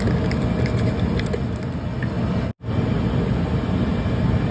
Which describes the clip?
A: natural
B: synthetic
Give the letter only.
A